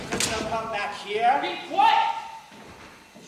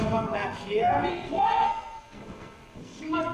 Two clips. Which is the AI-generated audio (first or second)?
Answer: second